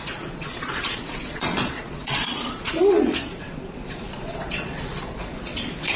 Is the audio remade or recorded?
remade